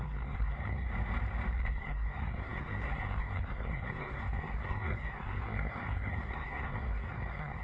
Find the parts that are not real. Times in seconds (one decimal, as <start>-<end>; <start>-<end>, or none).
0.0-0.9; 1.5-7.6